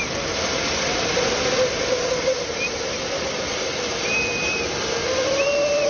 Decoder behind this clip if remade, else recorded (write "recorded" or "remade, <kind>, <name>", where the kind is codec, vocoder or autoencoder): recorded